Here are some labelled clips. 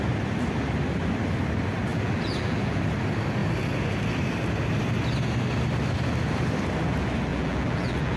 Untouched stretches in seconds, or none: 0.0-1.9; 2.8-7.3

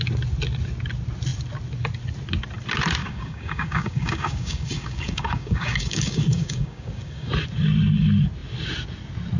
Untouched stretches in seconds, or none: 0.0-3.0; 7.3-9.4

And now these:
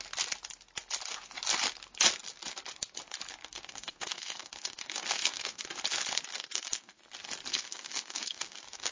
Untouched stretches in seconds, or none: 0.0-3.4; 5.6-6.3; 7.0-7.5

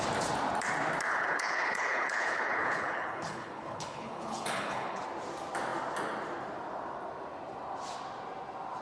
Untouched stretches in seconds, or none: 0.0-1.1; 5.0-8.8

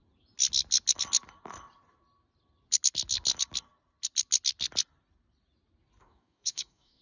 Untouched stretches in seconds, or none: 0.0-6.0

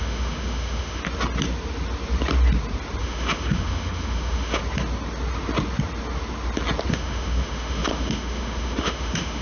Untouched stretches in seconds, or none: 1.0-3.0; 4.6-6.9